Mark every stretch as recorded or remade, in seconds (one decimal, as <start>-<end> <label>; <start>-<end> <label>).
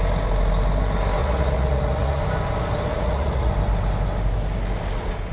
0.0-1.2 recorded; 1.2-2.2 remade; 2.2-2.9 recorded; 2.9-3.5 remade; 3.5-5.3 recorded